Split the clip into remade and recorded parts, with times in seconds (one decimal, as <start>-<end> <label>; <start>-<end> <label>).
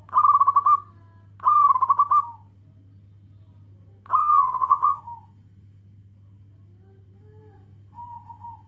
0.0-4.2 recorded; 4.2-5.0 remade; 5.0-8.7 recorded